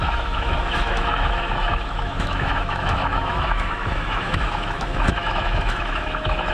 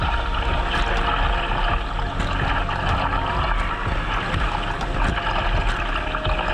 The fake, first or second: first